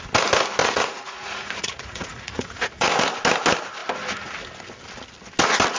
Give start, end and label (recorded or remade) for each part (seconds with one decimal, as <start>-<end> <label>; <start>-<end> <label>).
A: 0.0-0.6 recorded; 0.6-3.0 remade; 3.0-5.8 recorded